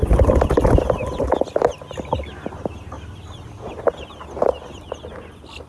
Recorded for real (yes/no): yes